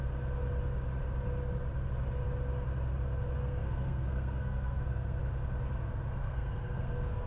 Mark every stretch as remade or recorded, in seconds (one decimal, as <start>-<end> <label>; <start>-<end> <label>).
0.0-3.4 recorded; 3.4-5.2 remade; 5.2-6.2 recorded; 6.2-7.3 remade